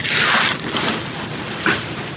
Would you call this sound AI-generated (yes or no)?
no